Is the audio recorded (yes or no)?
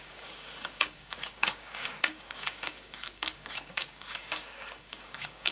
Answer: no